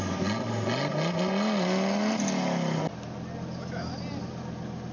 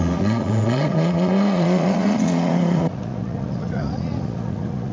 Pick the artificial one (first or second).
second